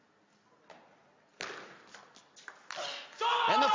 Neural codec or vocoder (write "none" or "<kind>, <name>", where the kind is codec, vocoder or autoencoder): none